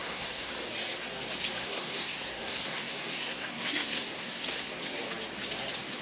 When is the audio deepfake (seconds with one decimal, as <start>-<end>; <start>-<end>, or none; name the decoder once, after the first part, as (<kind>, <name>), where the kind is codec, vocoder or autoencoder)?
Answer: 0.0-0.5 (codec, SNAC); 1.6-4.7